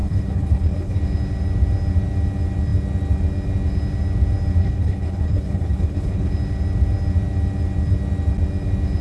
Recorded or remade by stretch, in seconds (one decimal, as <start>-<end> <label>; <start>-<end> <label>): 0.0-1.0 remade; 1.0-4.6 recorded; 4.6-6.3 remade; 6.3-9.0 recorded